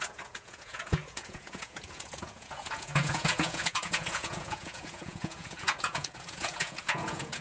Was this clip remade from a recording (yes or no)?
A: yes